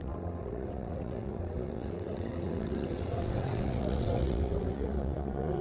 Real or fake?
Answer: fake